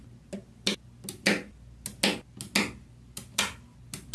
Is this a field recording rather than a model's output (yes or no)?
yes